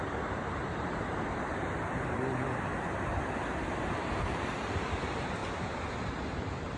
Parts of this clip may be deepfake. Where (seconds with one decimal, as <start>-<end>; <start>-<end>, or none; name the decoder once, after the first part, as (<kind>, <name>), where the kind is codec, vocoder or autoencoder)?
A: 0.0-2.7 (vocoder, BigVGAN v2); 4.2-6.8